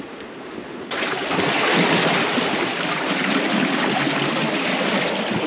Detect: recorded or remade recorded